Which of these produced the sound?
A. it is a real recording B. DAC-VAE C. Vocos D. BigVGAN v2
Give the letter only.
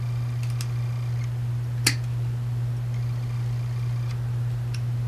A